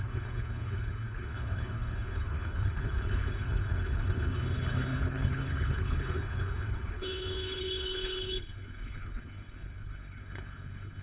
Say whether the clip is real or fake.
fake